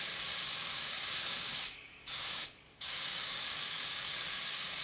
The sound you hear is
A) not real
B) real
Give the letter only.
A